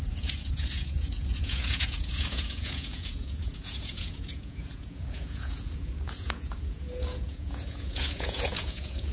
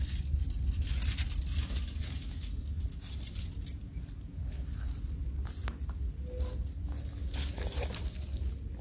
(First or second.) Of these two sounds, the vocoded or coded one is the first